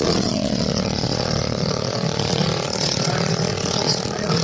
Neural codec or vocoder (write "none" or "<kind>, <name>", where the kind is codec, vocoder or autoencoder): vocoder, Vocos